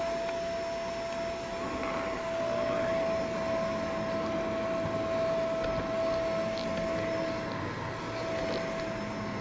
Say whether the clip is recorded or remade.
recorded